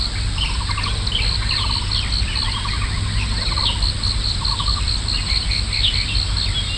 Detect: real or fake real